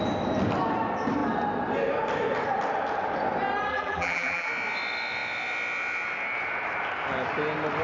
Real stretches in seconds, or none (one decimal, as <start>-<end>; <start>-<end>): 0.0-3.7; 4.5-7.8